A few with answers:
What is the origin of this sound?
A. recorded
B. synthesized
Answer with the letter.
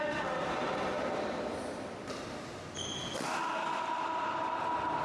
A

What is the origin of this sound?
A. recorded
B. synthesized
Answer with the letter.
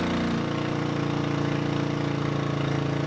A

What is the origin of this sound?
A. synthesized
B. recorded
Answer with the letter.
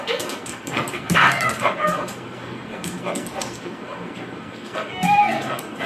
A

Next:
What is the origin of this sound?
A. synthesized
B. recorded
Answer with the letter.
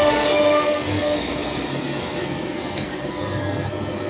A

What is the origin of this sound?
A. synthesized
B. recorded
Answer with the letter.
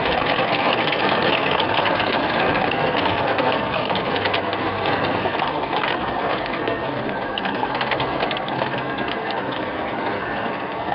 A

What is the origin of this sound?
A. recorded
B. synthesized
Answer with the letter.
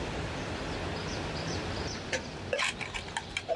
A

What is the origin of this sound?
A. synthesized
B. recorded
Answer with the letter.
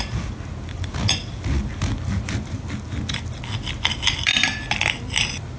B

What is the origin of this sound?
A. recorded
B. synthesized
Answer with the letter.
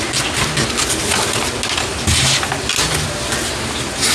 A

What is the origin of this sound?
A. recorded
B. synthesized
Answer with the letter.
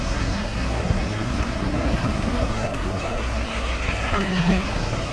B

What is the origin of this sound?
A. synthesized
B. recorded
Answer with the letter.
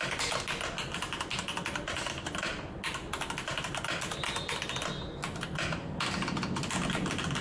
B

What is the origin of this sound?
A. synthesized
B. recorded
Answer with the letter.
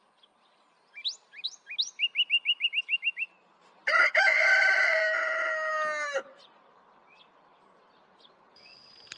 B